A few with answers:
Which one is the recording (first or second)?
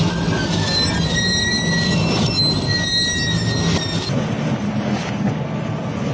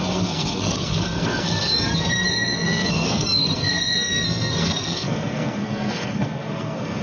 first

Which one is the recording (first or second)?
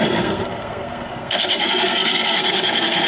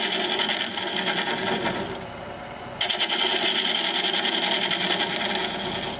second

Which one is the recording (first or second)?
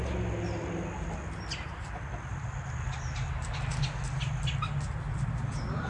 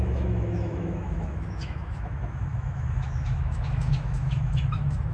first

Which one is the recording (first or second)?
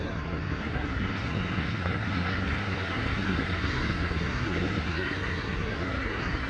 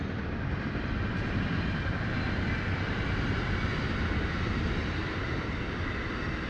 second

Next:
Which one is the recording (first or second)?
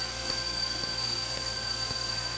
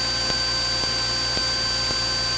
second